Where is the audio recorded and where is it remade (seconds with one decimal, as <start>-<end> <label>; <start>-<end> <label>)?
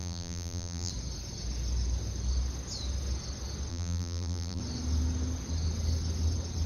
0.0-0.9 remade; 0.9-3.7 recorded; 3.7-4.6 remade; 4.6-6.7 recorded